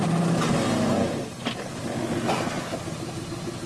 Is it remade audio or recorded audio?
recorded